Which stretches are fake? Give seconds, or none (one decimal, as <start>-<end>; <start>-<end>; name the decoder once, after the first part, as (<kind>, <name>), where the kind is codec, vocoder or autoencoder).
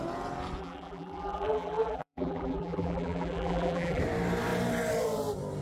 0.6-4.0 (vocoder, BigVGAN v2)